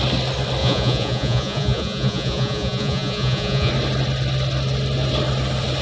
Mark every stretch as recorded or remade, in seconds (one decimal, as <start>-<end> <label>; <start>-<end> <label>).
0.0-0.6 recorded; 0.6-3.7 remade; 3.7-5.8 recorded